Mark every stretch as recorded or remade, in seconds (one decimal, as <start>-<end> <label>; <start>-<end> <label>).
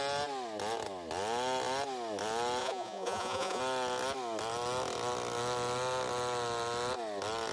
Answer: 0.0-2.6 recorded; 2.6-3.6 remade; 3.6-7.5 recorded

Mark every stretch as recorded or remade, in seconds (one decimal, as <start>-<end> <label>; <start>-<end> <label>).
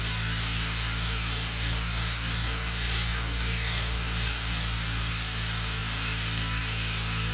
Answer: 0.0-7.3 remade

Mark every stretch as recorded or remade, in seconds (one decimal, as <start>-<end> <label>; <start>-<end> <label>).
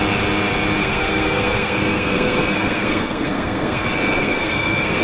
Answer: 0.0-0.8 recorded; 0.8-3.8 remade; 3.8-4.2 recorded; 4.2-5.0 remade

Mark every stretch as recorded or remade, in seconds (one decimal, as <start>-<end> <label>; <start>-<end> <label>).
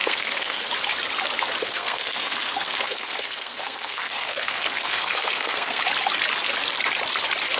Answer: 0.0-0.7 remade; 0.7-1.6 recorded; 1.6-5.8 remade; 5.8-7.6 recorded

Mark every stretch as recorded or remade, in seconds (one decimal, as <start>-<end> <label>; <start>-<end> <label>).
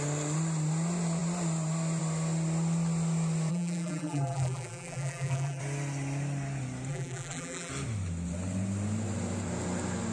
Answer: 0.0-3.5 recorded; 3.5-5.6 remade; 5.6-6.9 recorded; 6.9-7.7 remade; 7.7-10.1 recorded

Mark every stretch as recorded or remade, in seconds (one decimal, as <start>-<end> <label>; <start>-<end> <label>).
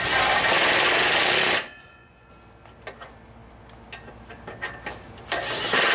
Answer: 0.0-1.6 recorded; 1.6-2.3 remade; 2.3-5.9 recorded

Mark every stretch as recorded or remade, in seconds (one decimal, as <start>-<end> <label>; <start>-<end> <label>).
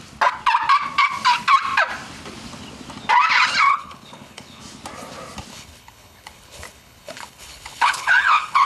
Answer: 0.0-3.7 recorded; 3.7-4.6 remade; 4.6-5.5 recorded; 5.5-8.7 remade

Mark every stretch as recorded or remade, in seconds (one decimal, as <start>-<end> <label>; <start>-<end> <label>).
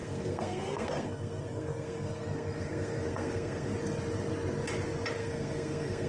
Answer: 0.0-3.7 remade; 3.7-5.2 recorded; 5.2-6.1 remade